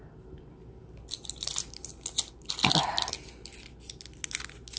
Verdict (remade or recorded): recorded